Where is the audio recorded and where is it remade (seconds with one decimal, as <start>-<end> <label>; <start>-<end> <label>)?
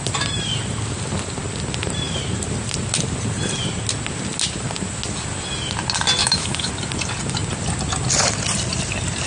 0.0-6.2 recorded; 6.2-6.7 remade; 6.7-9.3 recorded